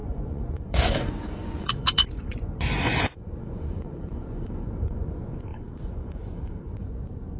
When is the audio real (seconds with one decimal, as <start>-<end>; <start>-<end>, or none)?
none